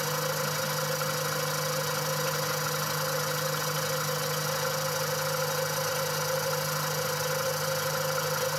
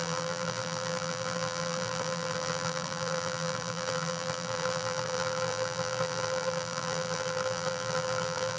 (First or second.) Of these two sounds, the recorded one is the first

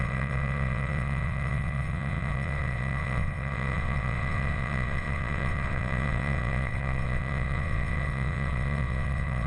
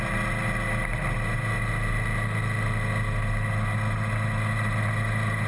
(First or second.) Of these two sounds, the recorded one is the second